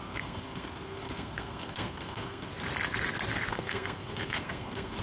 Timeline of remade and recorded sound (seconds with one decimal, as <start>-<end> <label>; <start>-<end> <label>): 0.0-2.5 remade; 2.5-3.5 recorded; 3.5-5.0 remade